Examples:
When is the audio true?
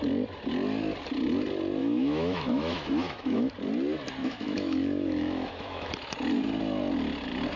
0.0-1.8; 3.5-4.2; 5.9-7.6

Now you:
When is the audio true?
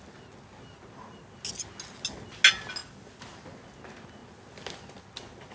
0.0-5.5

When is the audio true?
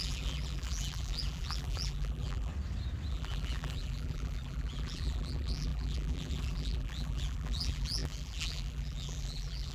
2.5-3.1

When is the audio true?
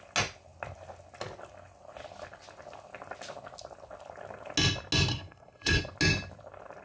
0.0-5.1; 5.8-6.8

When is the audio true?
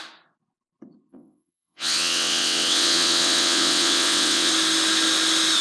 0.0-1.1; 4.5-5.6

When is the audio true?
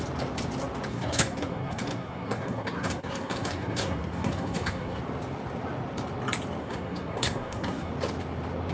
0.0-0.9; 5.0-6.6; 7.9-8.7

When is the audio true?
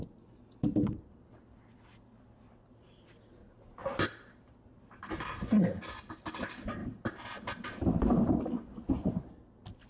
0.0-9.9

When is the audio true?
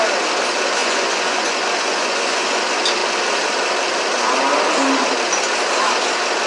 0.0-0.8; 2.6-6.5